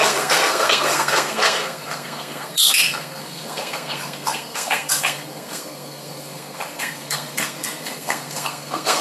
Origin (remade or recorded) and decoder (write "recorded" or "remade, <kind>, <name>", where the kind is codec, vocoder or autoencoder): remade, codec, SNAC